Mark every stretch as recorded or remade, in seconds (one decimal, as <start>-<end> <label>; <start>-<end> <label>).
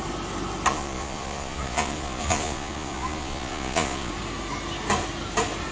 0.0-0.7 recorded; 0.7-4.1 remade; 4.1-5.7 recorded